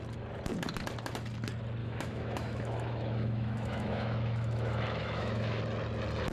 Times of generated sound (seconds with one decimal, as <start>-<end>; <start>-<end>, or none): 1.8-5.6